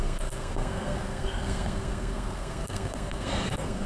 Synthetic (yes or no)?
yes